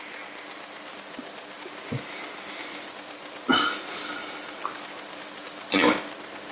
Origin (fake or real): real